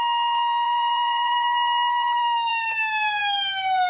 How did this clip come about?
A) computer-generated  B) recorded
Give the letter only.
A